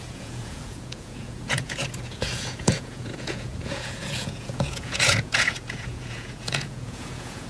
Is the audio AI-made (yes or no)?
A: yes